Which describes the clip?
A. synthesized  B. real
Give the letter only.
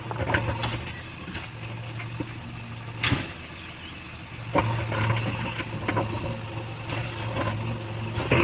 B